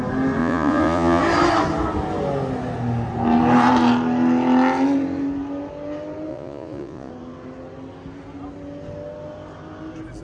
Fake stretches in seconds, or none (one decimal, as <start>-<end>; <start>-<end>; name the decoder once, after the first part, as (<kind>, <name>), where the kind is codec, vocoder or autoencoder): 0.4-1.2 (vocoder, Vocos); 6.3-7.1